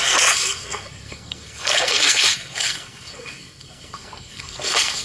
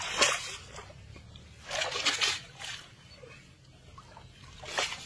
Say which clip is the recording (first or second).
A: second